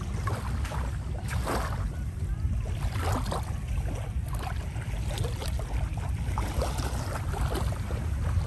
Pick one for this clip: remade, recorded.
recorded